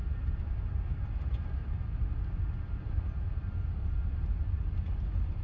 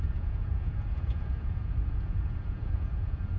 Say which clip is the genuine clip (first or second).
first